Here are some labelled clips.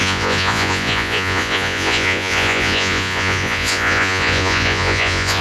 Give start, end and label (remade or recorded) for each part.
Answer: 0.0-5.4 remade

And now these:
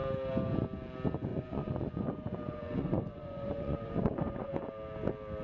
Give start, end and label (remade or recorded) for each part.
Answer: 0.0-1.3 recorded; 1.3-4.5 remade; 4.5-5.4 recorded